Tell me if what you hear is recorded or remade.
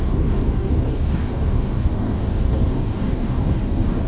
remade